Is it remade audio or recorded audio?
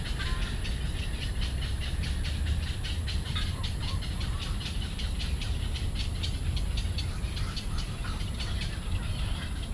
recorded